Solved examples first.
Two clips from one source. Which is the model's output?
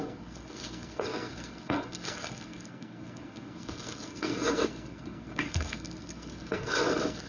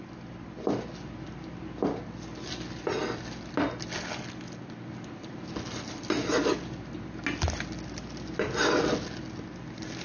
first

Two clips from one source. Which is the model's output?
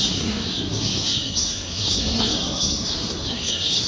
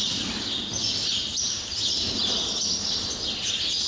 first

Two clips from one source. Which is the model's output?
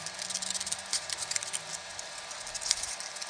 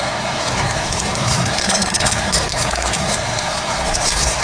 second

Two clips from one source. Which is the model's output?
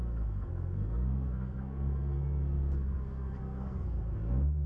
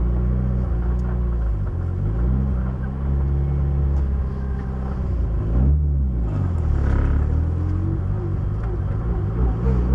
first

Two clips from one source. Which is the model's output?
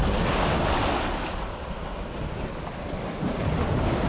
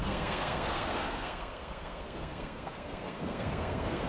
second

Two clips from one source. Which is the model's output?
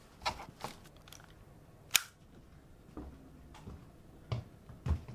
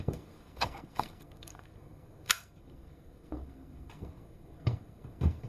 second